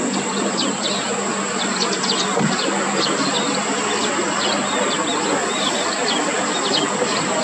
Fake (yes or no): no